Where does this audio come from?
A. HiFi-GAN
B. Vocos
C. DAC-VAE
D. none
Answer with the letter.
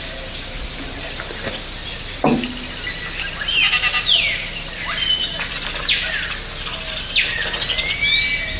D